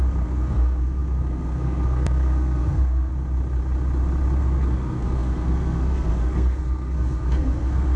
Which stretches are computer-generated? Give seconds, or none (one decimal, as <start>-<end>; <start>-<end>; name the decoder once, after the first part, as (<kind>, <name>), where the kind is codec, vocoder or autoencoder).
0.0-3.1 (codec, SNAC); 4.4-8.0